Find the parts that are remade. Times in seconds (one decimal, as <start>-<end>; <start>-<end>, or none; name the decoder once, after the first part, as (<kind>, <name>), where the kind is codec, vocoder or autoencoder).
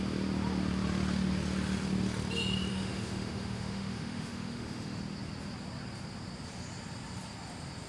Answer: 2.7-5.0 (autoencoder, DAC-VAE)